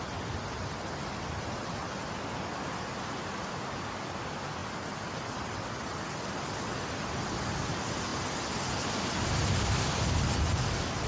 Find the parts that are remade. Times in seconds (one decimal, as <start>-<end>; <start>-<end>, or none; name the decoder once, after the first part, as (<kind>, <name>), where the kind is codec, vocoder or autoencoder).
none